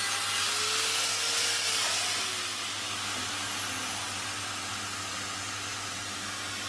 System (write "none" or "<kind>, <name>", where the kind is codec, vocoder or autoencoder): none